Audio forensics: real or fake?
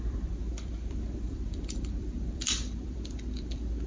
fake